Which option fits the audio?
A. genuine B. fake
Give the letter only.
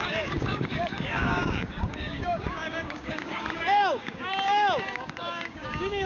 B